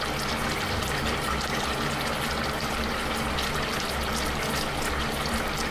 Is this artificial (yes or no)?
no